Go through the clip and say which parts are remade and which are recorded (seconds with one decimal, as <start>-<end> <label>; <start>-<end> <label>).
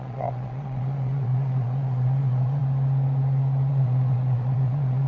0.0-2.6 remade; 2.6-3.7 recorded; 3.7-5.1 remade